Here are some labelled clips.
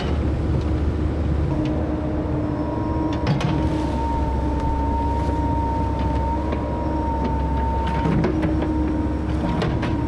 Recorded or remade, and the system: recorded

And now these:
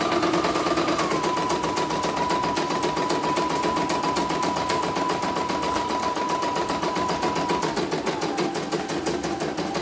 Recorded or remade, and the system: recorded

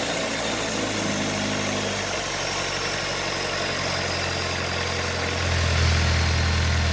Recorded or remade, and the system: recorded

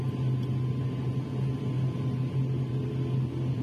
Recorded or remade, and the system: recorded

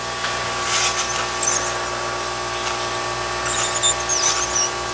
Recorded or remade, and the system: recorded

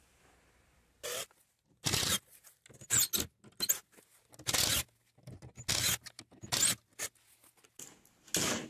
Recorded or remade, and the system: recorded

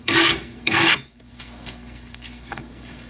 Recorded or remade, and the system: remade, codec, SNAC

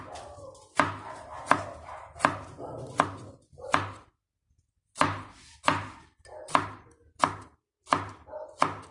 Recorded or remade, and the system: recorded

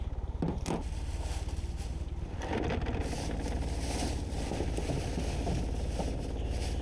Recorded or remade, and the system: remade, vocoder, BigVGAN v2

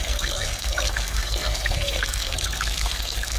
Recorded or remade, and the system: remade, codec, SNAC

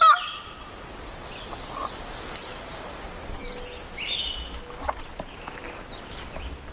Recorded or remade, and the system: recorded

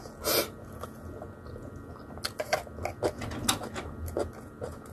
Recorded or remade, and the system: recorded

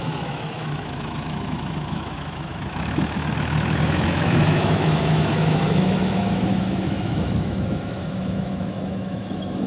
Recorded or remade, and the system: remade, autoencoder, DAC-VAE